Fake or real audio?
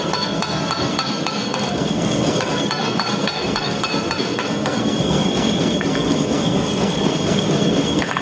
fake